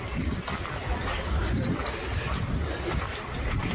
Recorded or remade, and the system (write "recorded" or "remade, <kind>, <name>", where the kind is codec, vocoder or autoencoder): recorded